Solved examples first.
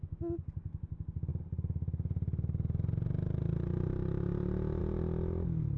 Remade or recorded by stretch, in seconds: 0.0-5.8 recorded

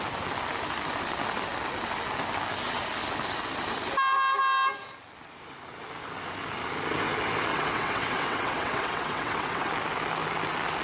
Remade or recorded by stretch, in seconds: 0.0-7.5 recorded; 7.5-9.7 remade; 9.7-10.8 recorded

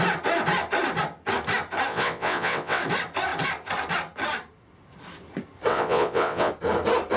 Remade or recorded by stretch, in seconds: 0.0-1.9 recorded; 1.9-2.8 remade; 2.8-5.7 recorded; 5.7-6.5 remade; 6.5-7.2 recorded

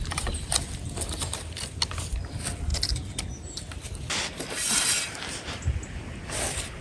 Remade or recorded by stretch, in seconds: 0.0-6.8 recorded